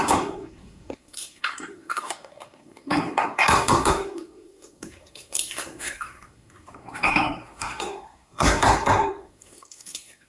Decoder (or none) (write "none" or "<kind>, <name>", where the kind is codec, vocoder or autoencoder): codec, SNAC